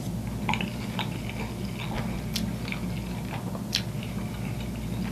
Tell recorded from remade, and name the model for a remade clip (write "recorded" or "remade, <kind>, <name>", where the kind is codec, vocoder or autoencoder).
recorded